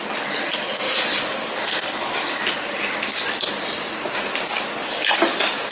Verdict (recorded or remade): recorded